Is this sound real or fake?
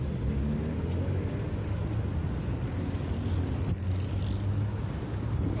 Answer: real